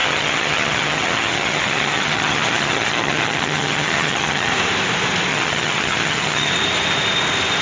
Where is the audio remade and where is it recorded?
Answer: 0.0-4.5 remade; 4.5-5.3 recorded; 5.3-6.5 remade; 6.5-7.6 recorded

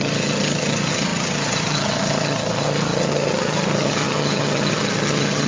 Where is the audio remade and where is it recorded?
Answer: 0.0-5.5 remade

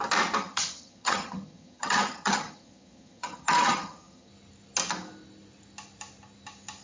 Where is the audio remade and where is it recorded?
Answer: 0.0-0.4 recorded; 0.4-4.3 remade; 4.3-6.8 recorded

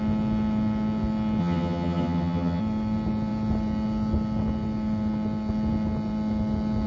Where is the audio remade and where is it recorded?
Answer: 0.0-1.4 recorded; 1.4-2.6 remade; 2.6-6.9 recorded

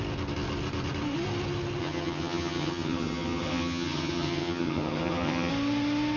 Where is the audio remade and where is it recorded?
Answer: 0.0-1.8 recorded; 1.8-5.5 remade; 5.5-6.2 recorded

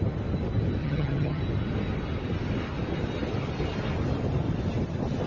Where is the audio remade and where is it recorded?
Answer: 0.0-0.8 recorded; 0.8-1.4 remade; 1.4-5.3 recorded

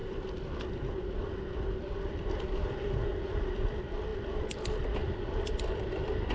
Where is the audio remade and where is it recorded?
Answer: 0.0-6.3 recorded

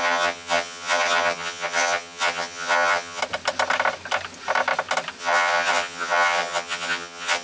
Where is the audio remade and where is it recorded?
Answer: 0.0-3.2 remade; 3.2-5.2 recorded; 5.2-7.4 remade